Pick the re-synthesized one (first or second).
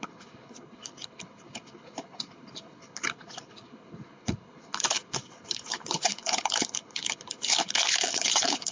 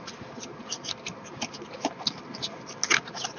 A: first